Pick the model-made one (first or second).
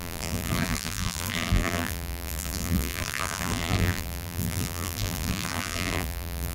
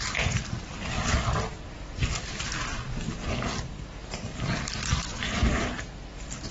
first